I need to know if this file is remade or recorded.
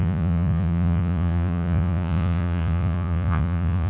remade